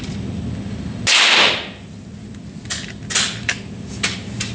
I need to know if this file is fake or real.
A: real